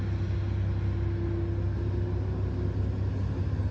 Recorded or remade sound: recorded